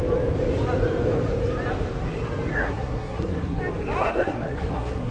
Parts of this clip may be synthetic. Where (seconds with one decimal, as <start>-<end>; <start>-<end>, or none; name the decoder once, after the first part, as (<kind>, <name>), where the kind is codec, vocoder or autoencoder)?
2.5-3.6 (codec, SNAC); 4.0-5.1